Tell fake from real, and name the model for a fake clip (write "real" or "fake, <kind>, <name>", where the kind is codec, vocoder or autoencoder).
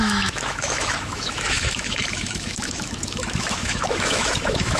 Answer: fake, autoencoder, DAC-VAE